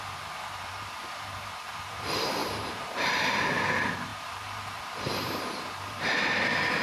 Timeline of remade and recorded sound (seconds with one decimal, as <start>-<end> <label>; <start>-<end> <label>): 0.0-6.8 remade